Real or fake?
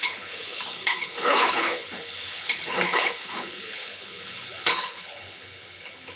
fake